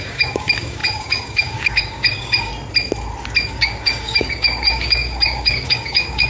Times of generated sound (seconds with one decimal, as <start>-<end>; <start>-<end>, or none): 0.0-2.5; 3.5-6.3